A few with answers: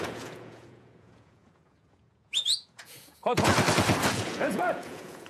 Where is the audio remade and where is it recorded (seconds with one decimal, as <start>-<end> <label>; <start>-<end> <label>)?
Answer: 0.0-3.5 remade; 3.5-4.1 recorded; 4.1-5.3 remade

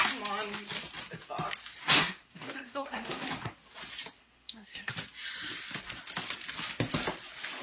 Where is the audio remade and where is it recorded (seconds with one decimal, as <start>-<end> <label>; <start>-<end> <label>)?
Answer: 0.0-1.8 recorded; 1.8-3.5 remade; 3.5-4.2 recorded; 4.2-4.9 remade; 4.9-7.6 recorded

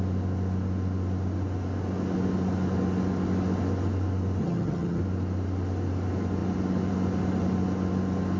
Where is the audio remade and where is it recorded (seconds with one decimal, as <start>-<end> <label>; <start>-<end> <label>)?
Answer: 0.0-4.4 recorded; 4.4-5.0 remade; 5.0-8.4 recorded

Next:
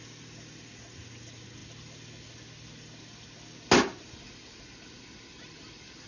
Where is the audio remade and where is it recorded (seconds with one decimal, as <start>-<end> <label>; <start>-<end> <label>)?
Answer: 0.0-6.1 recorded

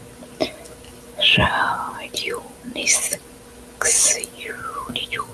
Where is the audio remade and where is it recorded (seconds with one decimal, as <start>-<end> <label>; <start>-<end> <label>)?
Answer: 0.0-5.3 recorded